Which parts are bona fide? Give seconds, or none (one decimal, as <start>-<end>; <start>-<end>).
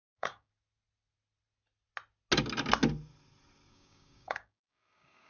0.5-3.7